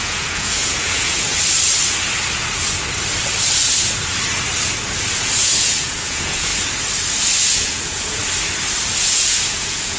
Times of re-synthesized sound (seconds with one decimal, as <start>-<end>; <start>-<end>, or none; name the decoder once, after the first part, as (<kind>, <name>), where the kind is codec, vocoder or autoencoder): 0.0-1.3 (vocoder, Vocos); 5.1-6.5; 7.4-8.2; 8.9-10.0

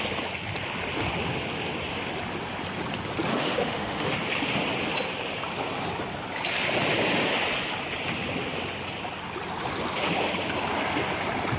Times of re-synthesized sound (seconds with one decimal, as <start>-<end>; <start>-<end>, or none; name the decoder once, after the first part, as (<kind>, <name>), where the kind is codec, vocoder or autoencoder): 3.3-4.1 (autoencoder, DAC-VAE)

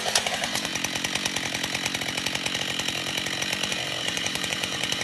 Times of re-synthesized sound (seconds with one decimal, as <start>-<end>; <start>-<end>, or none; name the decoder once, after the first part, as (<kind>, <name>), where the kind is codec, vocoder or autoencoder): 0.0-0.7 (vocoder, Vocos); 3.7-5.0

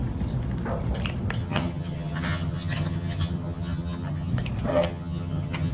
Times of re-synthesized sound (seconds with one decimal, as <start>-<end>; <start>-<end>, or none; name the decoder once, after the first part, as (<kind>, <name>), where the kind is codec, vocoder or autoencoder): 1.4-4.3 (vocoder, HiFi-GAN); 4.7-5.7

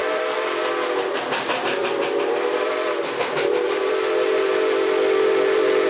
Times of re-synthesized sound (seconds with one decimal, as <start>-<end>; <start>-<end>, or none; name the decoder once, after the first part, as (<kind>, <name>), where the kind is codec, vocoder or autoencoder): 0.0-0.6 (vocoder, BigVGAN v2); 1.8-3.8